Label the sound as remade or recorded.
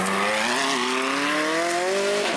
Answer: recorded